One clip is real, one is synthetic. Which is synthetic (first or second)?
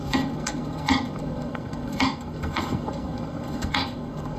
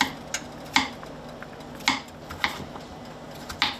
first